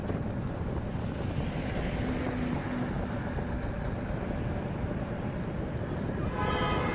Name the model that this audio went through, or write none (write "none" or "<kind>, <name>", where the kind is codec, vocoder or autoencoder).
none